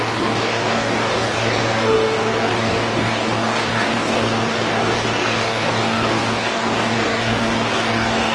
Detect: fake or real fake